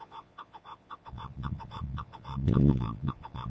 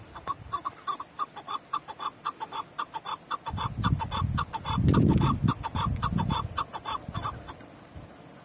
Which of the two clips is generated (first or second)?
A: first